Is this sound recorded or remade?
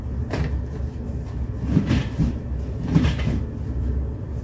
recorded